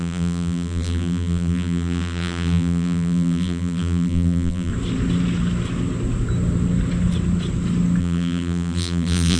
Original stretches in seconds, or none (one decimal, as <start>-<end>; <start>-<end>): 4.7-8.0